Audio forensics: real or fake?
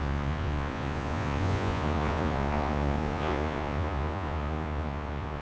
fake